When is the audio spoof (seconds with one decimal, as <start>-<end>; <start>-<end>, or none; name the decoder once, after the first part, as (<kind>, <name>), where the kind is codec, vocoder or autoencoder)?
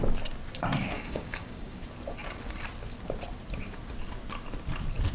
0.8-1.8 (codec, DAC)